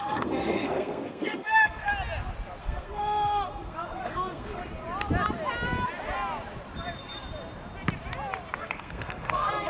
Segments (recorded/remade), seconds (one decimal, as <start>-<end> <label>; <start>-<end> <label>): 0.0-1.9 remade; 1.9-2.6 recorded; 2.6-4.6 remade; 4.6-8.6 recorded; 8.6-9.7 remade